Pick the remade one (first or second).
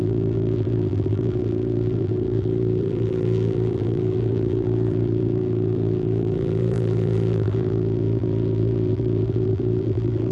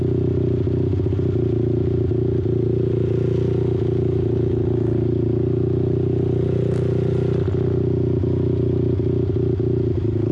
first